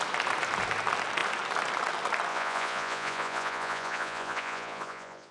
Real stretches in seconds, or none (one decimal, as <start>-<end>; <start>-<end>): 0.0-2.3